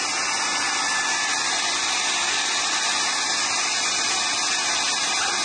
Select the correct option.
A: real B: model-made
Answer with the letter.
A